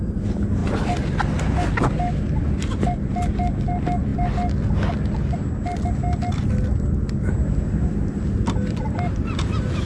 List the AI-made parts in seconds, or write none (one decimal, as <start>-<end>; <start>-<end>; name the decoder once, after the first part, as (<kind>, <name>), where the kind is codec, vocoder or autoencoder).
none